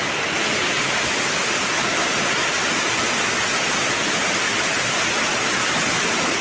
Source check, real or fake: real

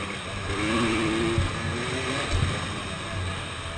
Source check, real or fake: real